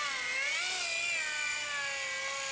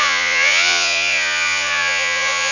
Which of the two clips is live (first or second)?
first